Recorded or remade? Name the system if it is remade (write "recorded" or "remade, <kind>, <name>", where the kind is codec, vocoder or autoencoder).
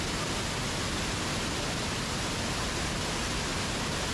recorded